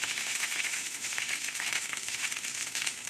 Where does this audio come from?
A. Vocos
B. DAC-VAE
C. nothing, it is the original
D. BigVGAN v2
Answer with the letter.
B